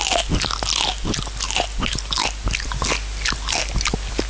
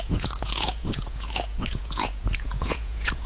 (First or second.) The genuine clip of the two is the first